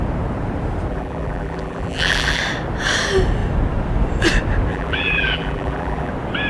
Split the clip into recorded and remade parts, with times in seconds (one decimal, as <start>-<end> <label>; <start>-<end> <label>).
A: 0.0-0.9 recorded; 0.9-2.4 remade; 2.4-4.7 recorded; 4.7-6.1 remade; 6.1-6.5 recorded